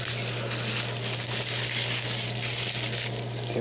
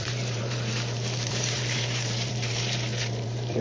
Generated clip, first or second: second